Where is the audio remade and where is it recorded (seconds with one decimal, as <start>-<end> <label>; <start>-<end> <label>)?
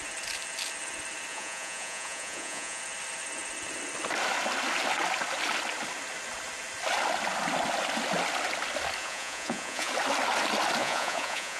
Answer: 0.0-1.3 recorded; 1.3-2.8 remade; 2.8-9.0 recorded; 9.0-9.9 remade; 9.9-10.8 recorded; 10.8-11.6 remade